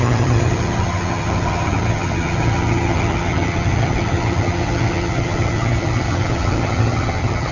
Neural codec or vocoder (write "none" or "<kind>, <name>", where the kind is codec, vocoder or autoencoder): vocoder, HiFi-GAN